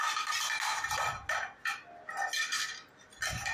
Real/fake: real